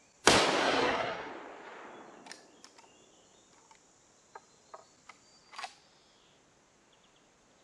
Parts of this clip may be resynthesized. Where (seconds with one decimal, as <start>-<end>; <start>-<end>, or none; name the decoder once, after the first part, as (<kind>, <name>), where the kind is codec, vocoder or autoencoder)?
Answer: 0.6-1.3 (codec, SNAC)